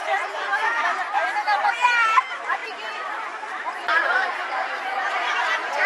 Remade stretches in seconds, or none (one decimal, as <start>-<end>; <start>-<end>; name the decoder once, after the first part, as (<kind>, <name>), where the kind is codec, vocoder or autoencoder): 0.0-5.9 (vocoder, BigVGAN v2)